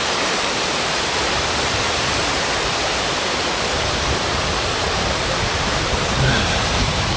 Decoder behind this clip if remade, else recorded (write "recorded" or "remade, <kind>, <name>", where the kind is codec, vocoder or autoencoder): remade, vocoder, BigVGAN v2